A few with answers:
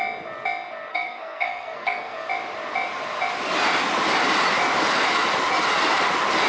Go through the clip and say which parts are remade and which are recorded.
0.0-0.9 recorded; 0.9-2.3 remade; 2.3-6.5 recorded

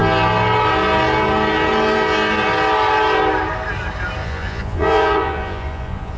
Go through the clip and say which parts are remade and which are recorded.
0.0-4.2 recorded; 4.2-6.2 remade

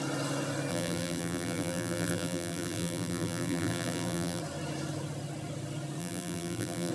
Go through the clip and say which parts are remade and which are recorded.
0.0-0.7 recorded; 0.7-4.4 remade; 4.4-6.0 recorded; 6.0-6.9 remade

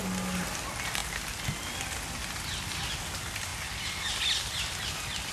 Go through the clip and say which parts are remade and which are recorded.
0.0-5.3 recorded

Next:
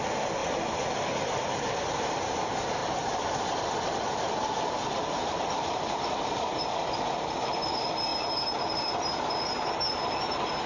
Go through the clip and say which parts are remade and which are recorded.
0.0-0.4 recorded; 0.4-2.4 remade; 2.4-2.8 recorded; 2.8-6.6 remade; 6.6-10.7 recorded

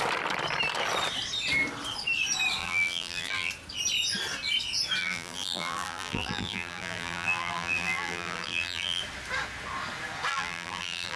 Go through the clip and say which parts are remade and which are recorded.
0.0-2.6 recorded; 2.6-3.5 remade; 3.5-5.0 recorded; 5.0-9.0 remade; 9.0-10.3 recorded; 10.3-11.2 remade